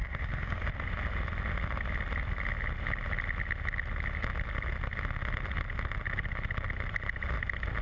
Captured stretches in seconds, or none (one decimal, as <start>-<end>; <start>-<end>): 0.7-7.8